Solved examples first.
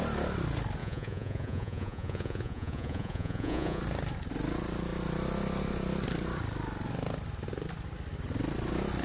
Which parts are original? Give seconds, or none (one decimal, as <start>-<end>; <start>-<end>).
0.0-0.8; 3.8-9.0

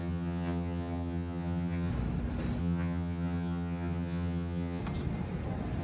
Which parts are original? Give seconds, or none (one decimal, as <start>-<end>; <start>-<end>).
1.9-2.6; 4.8-5.8

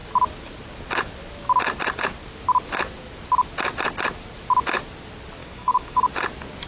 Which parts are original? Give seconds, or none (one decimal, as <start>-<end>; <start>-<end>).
0.0-5.4; 6.1-6.7